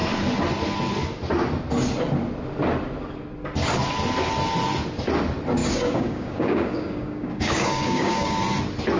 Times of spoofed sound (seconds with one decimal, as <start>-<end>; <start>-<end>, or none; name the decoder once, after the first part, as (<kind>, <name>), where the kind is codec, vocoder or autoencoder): 5.6-8.4 (codec, DAC)

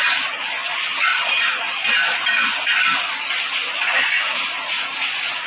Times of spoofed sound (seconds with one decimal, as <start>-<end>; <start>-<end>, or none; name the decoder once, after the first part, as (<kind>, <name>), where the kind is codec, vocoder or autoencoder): none